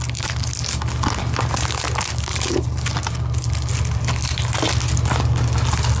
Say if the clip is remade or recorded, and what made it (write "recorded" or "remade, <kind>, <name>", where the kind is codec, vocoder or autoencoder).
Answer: recorded